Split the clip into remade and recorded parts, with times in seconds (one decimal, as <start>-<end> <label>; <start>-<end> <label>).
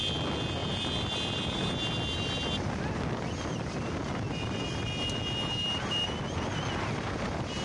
0.0-7.6 recorded